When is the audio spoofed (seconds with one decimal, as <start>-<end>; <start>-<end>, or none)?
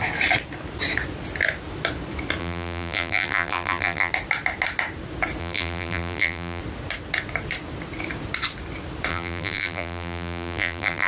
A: 2.4-4.1; 5.4-6.6; 9.1-11.1